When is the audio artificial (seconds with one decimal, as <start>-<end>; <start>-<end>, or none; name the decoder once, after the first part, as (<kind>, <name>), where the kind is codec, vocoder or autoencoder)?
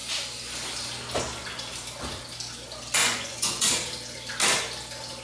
3.0-3.7 (vocoder, Vocos)